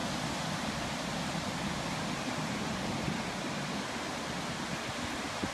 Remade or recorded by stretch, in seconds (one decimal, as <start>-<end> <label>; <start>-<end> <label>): 0.0-5.5 recorded